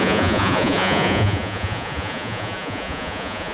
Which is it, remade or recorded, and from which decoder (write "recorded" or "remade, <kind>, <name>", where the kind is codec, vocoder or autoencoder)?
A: remade, vocoder, Vocos